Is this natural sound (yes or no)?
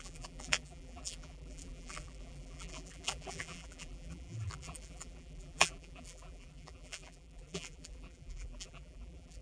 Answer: no